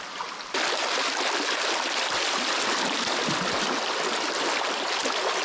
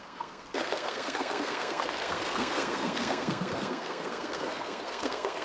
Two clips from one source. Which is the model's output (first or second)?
second